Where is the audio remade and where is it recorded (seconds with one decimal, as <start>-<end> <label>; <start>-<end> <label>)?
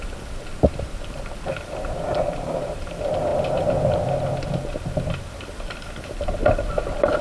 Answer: 0.0-2.1 recorded; 2.1-2.8 remade; 2.8-7.2 recorded